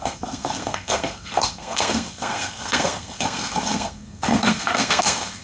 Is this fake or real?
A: fake